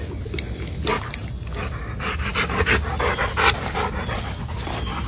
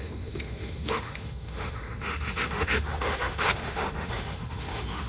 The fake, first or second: second